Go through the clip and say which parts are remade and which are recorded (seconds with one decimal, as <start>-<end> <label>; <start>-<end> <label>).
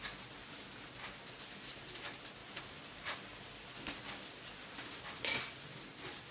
0.0-2.4 recorded; 2.4-5.3 remade; 5.3-6.3 recorded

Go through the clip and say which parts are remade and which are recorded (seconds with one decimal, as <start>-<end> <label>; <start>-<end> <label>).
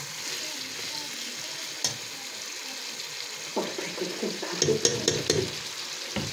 0.0-3.5 recorded; 3.5-4.4 remade; 4.4-4.9 recorded; 4.9-6.3 remade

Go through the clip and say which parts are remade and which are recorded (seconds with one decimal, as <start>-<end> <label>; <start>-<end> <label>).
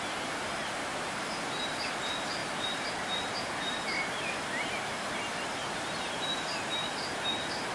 0.0-2.4 recorded; 2.4-2.9 remade; 2.9-5.6 recorded; 5.6-6.1 remade; 6.1-7.7 recorded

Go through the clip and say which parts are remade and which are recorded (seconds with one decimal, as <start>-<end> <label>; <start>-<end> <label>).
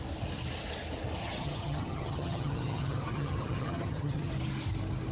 0.0-1.2 recorded; 1.2-4.3 remade; 4.3-5.1 recorded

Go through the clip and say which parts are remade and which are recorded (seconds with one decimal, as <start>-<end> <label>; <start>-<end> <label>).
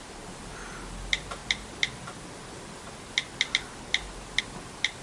0.0-5.0 recorded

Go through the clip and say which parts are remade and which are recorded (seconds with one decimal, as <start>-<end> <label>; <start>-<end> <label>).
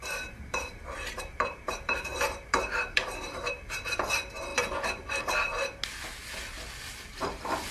0.0-4.1 remade; 4.1-7.7 recorded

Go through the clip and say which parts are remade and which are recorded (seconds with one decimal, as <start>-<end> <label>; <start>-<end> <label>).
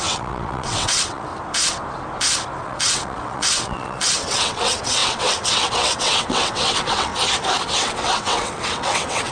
0.0-1.3 remade; 1.3-2.6 recorded; 2.6-7.1 remade; 7.1-7.7 recorded; 7.7-9.3 remade